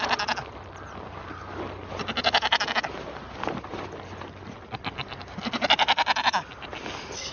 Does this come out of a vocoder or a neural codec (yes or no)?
no